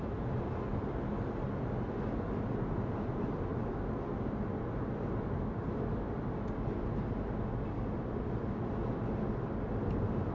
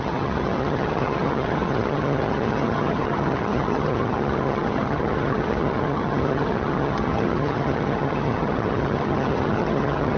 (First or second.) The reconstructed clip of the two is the second